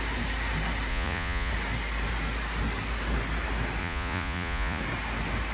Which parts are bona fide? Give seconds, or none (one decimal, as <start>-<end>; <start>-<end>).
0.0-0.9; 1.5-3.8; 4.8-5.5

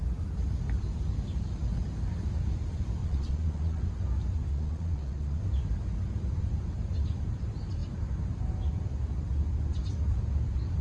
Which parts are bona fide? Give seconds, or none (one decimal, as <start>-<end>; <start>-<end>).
0.0-3.0; 3.8-4.5; 5.4-10.8

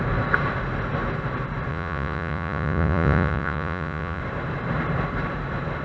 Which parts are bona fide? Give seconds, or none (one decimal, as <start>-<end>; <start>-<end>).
0.0-1.7; 4.2-5.8

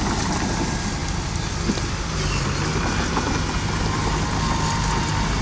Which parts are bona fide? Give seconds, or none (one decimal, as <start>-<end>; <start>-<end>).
0.0-5.4

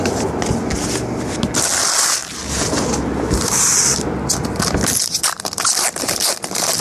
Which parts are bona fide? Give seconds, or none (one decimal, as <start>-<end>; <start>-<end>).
0.0-6.8

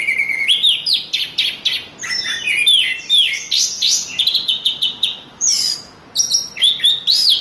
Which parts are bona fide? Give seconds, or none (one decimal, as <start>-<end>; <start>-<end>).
0.0-4.3; 5.7-7.4

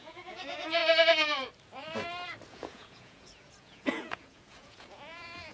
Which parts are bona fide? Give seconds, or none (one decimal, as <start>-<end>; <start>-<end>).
0.8-2.5

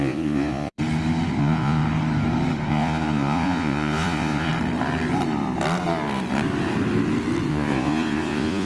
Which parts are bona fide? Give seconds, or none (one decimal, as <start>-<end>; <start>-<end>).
0.8-1.4; 1.8-2.7; 4.5-7.5